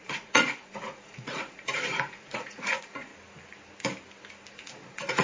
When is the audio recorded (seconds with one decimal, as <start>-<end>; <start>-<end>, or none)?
3.1-4.5